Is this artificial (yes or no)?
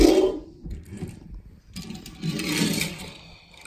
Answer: yes